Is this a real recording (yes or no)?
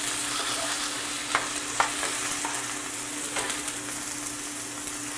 yes